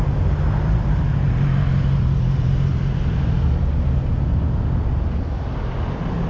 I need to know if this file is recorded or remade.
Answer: recorded